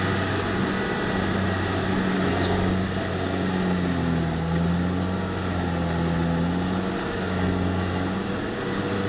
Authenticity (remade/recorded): recorded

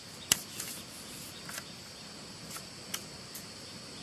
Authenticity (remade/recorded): recorded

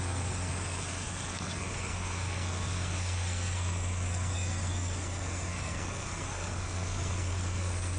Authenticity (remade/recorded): remade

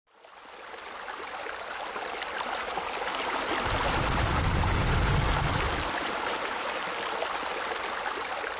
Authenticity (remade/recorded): recorded